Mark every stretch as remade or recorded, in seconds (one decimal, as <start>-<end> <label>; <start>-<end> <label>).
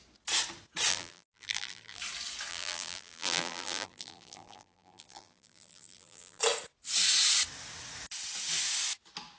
0.0-0.9 recorded; 0.9-2.0 remade; 2.0-2.5 recorded; 2.5-6.4 remade; 6.4-9.4 recorded